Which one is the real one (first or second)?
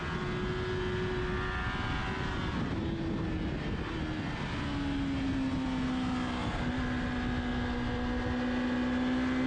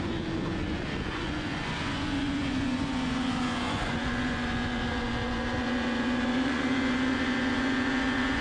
first